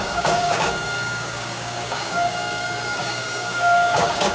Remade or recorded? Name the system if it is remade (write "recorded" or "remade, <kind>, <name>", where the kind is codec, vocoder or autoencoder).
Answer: remade, codec, DAC